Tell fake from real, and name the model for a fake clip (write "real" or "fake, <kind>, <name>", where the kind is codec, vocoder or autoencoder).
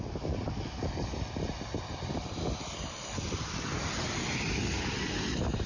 real